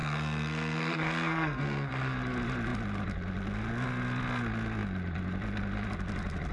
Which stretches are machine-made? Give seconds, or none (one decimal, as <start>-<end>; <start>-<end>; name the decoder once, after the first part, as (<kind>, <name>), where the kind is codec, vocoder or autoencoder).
0.0-1.9 (codec, SNAC)